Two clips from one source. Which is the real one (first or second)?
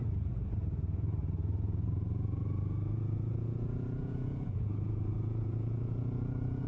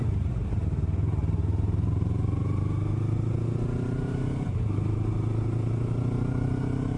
second